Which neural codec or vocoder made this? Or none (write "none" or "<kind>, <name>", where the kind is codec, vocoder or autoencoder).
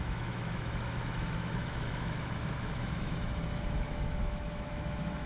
autoencoder, DAC-VAE